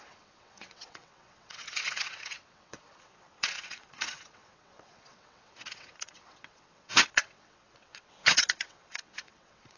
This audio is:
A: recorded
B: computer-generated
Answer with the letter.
B